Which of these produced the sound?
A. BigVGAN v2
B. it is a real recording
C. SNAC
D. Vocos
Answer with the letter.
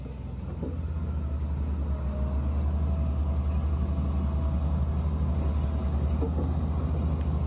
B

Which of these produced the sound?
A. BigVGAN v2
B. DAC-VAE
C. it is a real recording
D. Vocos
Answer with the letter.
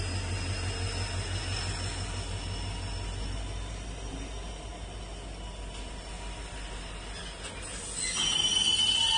C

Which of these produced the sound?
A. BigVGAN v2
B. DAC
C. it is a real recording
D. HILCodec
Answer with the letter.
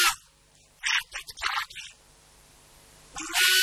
C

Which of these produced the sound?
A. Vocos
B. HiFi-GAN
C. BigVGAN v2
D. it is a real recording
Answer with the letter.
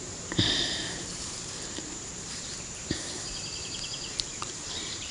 C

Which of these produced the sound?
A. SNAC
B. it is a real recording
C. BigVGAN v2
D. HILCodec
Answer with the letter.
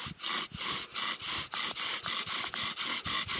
B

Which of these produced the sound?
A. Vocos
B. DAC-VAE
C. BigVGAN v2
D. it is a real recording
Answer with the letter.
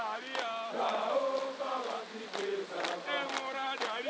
D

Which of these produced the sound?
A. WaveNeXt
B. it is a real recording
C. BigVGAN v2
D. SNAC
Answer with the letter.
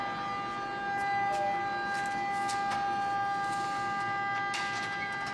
B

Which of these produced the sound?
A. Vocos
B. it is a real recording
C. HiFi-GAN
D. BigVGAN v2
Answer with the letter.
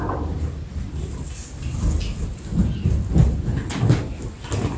B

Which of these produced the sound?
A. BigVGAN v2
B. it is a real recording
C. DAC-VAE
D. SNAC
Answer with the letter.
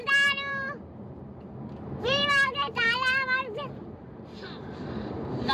A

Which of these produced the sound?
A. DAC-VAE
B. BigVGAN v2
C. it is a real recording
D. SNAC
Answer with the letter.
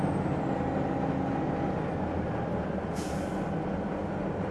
C